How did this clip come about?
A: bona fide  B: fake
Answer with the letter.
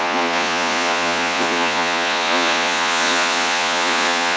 B